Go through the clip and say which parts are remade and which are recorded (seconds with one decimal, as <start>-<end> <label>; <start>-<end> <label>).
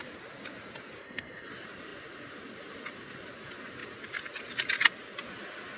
0.0-1.0 recorded; 1.0-1.5 remade; 1.5-5.8 recorded